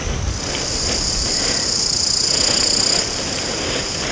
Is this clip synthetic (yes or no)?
no